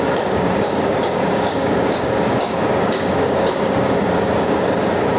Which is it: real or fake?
fake